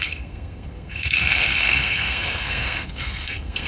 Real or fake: fake